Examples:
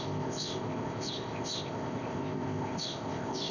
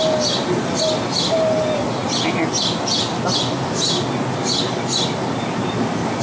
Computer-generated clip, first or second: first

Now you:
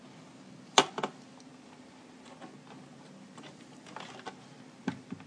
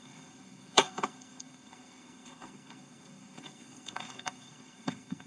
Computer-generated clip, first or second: second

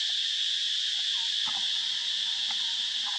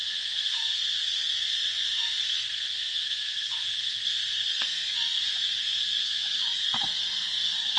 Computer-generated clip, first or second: second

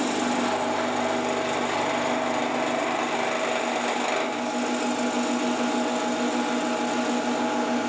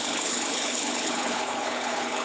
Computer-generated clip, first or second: second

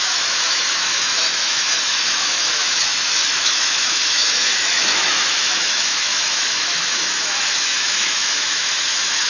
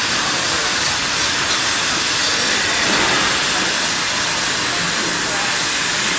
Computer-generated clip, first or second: first